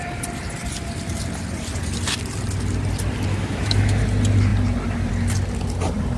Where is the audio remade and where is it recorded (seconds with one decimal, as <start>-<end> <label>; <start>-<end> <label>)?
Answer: 0.0-3.3 recorded; 3.3-4.0 remade; 4.0-6.2 recorded